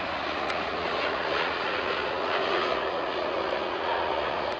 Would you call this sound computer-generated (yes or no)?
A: yes